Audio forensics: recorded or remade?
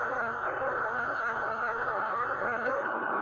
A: remade